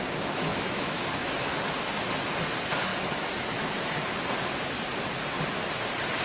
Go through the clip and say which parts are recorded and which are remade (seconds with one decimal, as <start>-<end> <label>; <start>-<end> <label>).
0.0-0.5 recorded; 0.5-1.7 remade; 1.7-2.9 recorded; 2.9-4.2 remade; 4.2-6.2 recorded